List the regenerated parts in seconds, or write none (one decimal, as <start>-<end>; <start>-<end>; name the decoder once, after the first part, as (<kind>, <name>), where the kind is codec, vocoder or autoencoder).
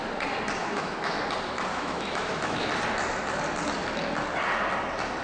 0.6-1.2 (autoencoder, DAC-VAE); 1.7-2.7